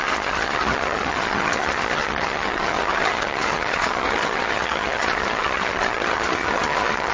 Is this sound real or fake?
fake